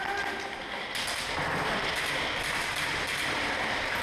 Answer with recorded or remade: recorded